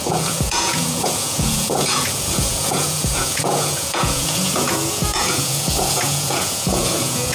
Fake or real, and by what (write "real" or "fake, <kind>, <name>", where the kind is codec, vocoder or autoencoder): fake, vocoder, Vocos